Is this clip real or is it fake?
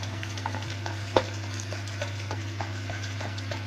fake